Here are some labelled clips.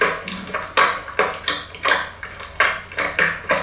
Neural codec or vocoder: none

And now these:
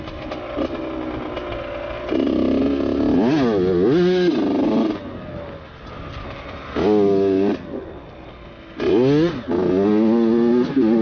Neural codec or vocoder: none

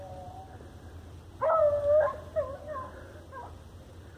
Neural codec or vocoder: none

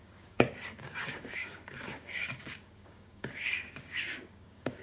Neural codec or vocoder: codec, DAC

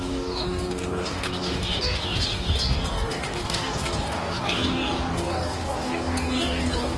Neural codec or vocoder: codec, DAC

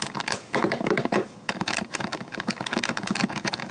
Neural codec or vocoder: codec, DAC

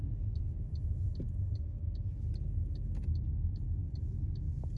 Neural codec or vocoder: none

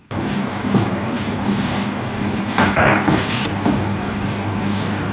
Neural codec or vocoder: codec, DAC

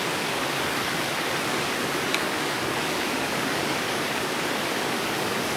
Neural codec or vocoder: codec, DAC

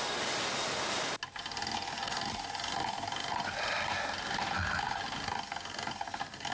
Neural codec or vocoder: none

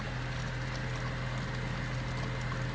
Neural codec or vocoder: none